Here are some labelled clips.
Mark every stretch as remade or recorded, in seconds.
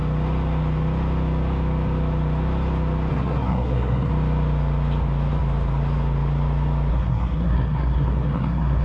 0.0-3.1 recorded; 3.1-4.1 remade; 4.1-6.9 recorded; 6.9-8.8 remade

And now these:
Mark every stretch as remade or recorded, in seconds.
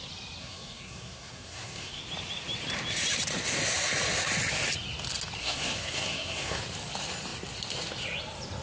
0.0-0.4 recorded; 0.4-2.0 remade; 2.0-5.4 recorded; 5.4-6.6 remade; 6.6-8.6 recorded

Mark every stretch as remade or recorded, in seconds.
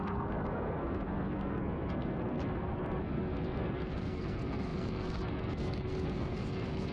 0.0-6.9 remade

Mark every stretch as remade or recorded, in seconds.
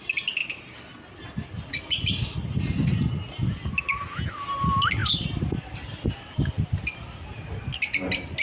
0.0-8.4 recorded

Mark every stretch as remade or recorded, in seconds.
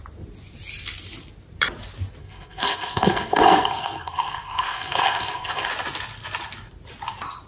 0.0-2.2 recorded; 2.2-5.7 remade; 5.7-7.5 recorded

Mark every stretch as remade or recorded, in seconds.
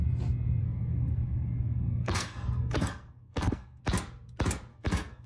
0.0-0.6 recorded; 0.6-3.8 remade; 3.8-4.7 recorded; 4.7-5.3 remade